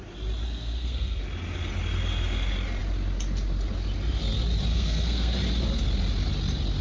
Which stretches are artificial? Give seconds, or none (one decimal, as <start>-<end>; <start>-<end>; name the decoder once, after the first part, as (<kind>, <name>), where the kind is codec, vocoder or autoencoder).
0.4-1.2 (codec, SNAC); 4.7-5.3